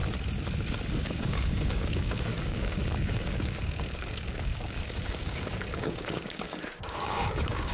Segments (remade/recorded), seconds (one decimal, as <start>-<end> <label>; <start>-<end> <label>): 0.0-1.0 recorded; 1.0-7.7 remade